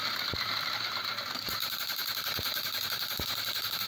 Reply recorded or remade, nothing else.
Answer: remade